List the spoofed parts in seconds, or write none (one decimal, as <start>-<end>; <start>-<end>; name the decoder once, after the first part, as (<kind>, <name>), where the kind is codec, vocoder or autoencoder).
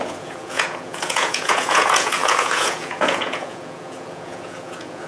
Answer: 0.0-5.1 (vocoder, Vocos)